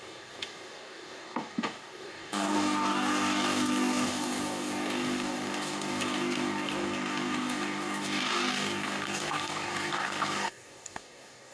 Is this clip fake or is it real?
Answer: fake